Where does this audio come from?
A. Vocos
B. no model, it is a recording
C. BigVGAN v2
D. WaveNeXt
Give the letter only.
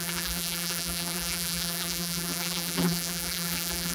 C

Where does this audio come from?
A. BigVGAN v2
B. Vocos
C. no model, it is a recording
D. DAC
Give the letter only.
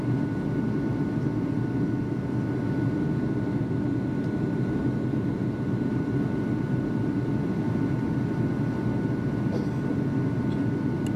C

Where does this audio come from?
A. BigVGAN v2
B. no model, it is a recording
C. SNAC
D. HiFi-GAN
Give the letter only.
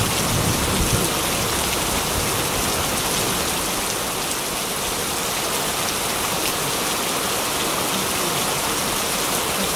B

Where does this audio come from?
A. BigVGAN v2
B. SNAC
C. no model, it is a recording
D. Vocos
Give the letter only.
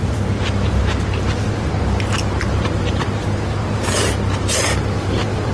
A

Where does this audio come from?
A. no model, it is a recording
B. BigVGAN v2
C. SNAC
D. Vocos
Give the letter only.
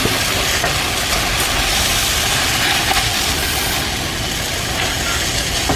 A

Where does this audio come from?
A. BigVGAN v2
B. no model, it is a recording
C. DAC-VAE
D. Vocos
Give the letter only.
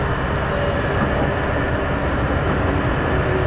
B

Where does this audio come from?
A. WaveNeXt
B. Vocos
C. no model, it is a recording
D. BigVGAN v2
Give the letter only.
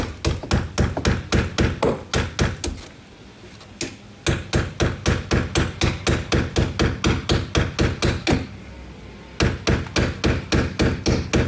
C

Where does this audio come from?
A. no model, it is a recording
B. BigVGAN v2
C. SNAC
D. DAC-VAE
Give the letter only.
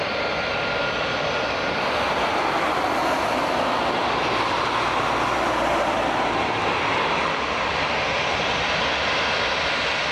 A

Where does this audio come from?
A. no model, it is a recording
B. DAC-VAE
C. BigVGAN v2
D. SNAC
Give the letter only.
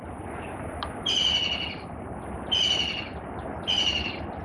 A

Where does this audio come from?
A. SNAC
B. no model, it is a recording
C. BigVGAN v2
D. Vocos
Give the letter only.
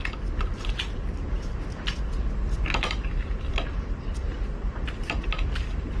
C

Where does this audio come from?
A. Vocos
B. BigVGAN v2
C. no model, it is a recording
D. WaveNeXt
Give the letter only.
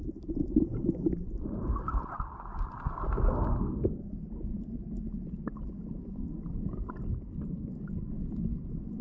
C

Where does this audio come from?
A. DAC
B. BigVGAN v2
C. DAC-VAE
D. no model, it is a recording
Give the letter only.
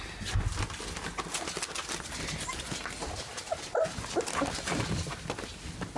D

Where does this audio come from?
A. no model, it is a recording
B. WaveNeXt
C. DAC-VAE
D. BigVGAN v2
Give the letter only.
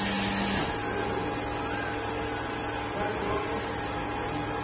A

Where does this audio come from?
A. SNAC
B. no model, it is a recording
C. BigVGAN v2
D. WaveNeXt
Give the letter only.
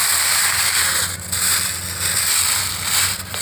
B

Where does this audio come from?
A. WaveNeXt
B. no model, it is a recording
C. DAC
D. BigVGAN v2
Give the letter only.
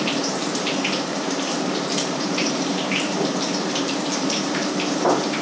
D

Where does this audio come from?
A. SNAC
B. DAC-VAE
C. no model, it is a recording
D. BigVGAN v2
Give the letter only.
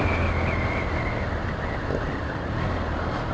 C